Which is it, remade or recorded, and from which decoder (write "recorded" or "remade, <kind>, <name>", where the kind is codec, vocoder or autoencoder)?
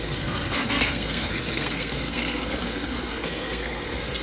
remade, codec, SNAC